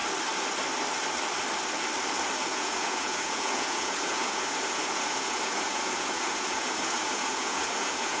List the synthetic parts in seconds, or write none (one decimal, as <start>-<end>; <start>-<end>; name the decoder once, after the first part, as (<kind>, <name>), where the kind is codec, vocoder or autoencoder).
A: 2.4-8.2 (vocoder, Vocos)